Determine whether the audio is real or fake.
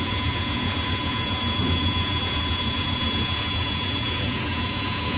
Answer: fake